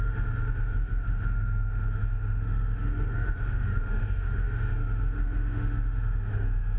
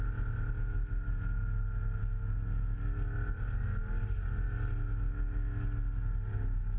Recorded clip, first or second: second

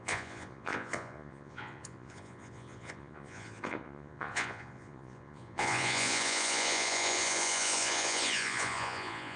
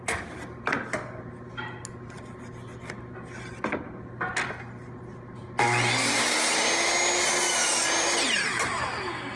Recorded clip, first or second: second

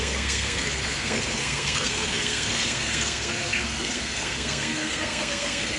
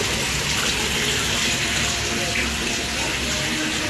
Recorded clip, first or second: second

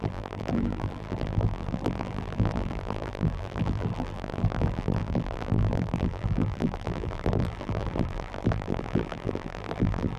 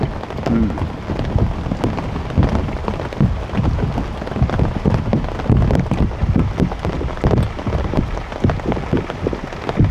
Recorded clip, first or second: second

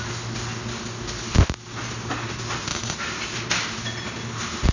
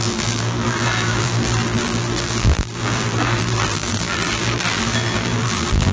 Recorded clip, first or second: first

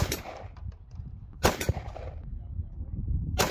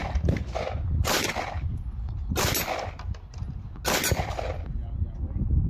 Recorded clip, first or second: second